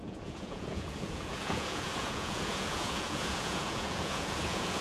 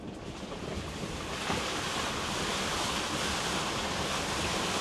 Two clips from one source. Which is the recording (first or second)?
second